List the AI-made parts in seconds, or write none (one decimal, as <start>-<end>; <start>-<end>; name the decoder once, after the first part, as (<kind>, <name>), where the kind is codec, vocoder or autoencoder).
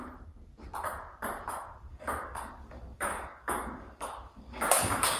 1.9-5.2 (codec, DAC)